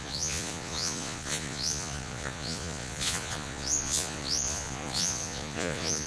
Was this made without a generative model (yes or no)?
no